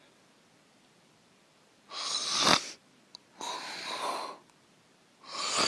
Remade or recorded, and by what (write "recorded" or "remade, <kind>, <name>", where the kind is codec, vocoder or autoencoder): remade, vocoder, BigVGAN v2